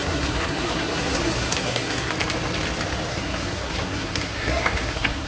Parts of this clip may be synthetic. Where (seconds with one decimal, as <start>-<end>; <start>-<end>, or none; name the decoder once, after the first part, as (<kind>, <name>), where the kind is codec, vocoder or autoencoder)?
0.0-2.1 (codec, SNAC); 3.1-5.3